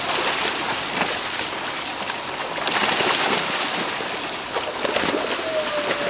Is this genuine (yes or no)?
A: yes